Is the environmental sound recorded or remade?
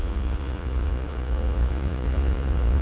remade